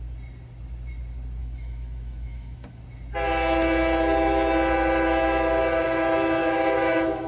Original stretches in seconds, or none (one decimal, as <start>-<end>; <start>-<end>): 0.0-1.4; 2.8-6.4